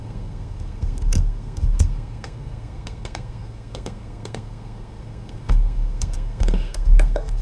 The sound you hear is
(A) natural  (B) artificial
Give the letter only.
B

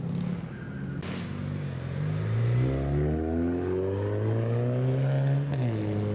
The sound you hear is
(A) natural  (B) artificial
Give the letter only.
A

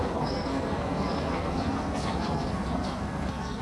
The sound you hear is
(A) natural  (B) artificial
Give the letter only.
B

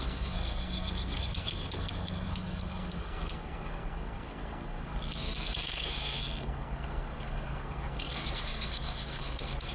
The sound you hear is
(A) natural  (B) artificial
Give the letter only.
B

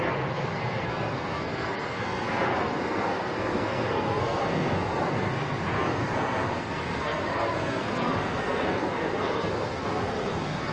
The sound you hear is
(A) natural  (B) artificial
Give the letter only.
B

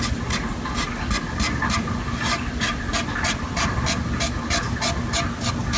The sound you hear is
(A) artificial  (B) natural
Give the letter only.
B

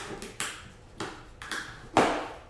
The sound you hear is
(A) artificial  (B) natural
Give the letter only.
B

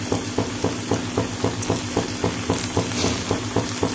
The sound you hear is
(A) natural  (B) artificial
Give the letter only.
A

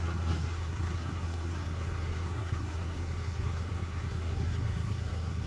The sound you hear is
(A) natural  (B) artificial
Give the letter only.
B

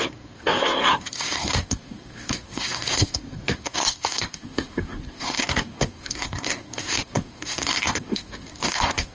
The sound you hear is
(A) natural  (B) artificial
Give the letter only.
B